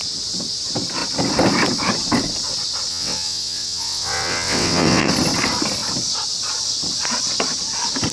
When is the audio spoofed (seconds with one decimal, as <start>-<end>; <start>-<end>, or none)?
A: 2.9-5.1